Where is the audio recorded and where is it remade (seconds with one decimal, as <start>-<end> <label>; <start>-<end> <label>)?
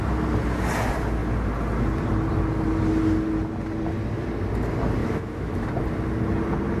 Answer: 0.0-5.0 recorded; 5.0-5.7 remade; 5.7-6.8 recorded